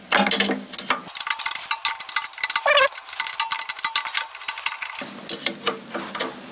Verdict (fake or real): real